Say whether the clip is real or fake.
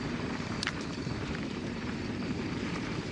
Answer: fake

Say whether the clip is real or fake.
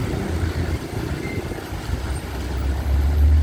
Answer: real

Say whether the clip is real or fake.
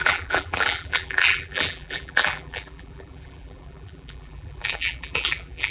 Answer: fake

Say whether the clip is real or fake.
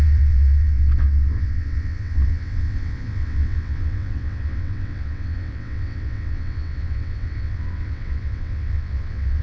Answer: fake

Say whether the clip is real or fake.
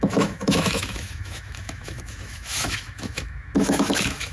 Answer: fake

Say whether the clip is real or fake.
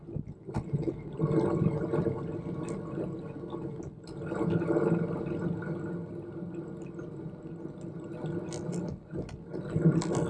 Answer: real